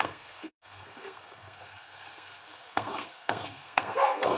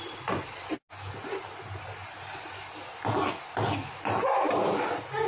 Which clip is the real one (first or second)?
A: second